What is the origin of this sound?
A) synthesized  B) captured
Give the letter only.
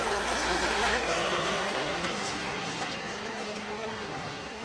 A